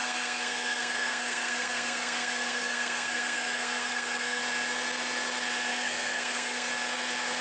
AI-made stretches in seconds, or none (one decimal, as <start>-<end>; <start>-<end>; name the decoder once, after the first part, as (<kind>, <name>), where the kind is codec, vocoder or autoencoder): 0.0-4.4 (codec, SNAC); 5.7-6.7